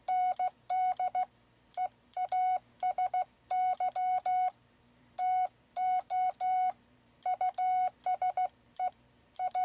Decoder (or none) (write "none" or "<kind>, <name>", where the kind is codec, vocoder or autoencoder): vocoder, BigVGAN v2